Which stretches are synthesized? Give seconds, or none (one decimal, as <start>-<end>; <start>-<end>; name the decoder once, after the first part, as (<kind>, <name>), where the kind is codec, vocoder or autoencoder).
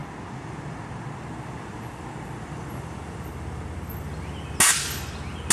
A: 0.0-3.3 (vocoder, BigVGAN v2)